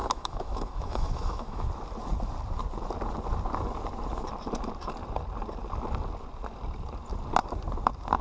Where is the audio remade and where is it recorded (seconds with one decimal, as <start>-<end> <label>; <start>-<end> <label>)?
0.0-1.7 remade; 1.7-8.2 recorded